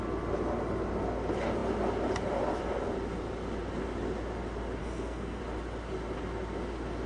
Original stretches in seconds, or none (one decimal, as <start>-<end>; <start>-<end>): 0.0-4.8; 5.4-7.1